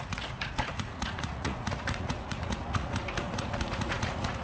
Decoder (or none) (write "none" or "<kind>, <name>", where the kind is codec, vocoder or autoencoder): vocoder, Vocos